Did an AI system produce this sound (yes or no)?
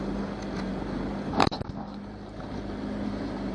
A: no